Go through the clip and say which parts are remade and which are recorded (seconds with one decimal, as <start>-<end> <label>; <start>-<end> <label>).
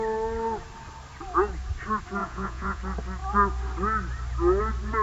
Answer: 0.0-2.2 recorded; 2.2-2.8 remade; 2.8-5.0 recorded